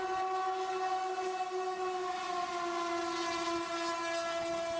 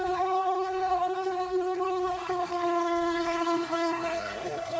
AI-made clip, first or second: second